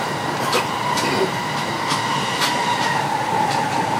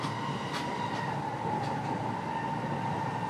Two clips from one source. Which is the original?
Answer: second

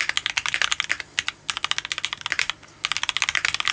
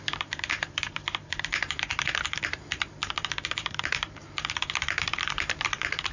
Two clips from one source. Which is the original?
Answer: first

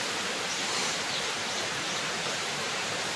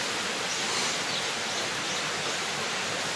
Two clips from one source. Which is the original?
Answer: second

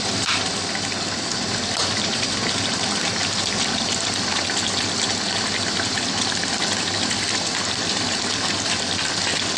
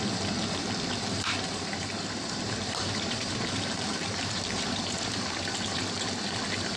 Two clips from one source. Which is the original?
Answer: first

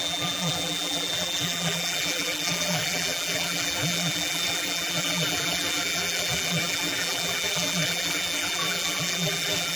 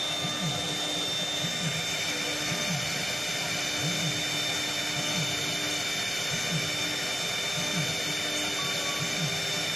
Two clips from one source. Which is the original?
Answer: second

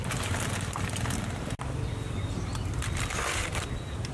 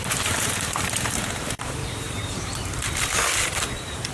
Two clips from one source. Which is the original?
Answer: first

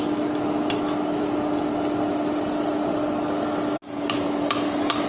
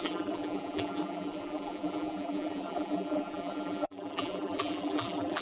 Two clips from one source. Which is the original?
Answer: first